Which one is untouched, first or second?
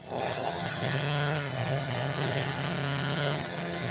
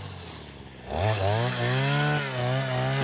second